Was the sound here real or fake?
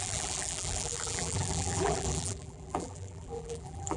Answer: fake